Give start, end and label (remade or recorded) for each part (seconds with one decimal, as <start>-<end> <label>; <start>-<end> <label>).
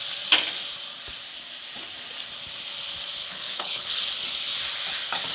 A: 0.0-3.2 recorded; 3.2-4.0 remade; 4.0-5.3 recorded